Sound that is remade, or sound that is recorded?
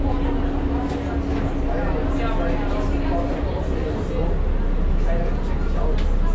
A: recorded